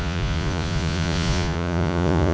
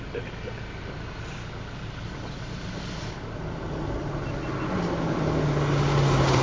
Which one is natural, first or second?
second